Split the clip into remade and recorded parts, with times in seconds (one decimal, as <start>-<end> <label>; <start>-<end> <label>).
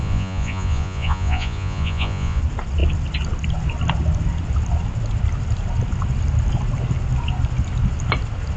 0.0-2.4 remade; 2.4-8.6 recorded